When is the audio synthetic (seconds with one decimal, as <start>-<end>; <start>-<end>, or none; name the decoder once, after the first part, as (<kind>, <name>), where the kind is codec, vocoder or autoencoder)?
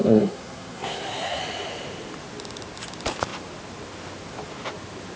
0.0-1.4 (codec, SNAC)